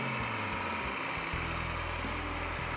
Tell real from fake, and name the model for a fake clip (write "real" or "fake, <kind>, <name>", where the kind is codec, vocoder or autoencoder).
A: real